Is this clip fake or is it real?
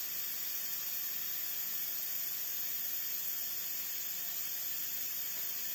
real